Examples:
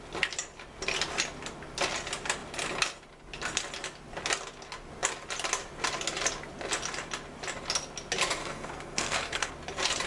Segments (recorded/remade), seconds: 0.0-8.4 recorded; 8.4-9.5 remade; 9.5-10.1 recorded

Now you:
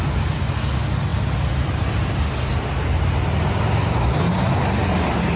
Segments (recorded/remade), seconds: 0.0-5.4 recorded

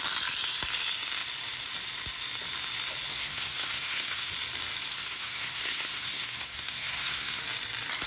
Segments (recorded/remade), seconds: 0.0-3.1 recorded; 3.1-4.3 remade; 4.3-4.9 recorded; 4.9-7.4 remade; 7.4-8.1 recorded